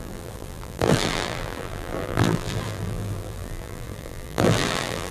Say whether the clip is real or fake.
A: fake